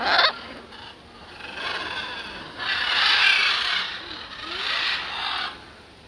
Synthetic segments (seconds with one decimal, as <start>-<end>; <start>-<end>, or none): none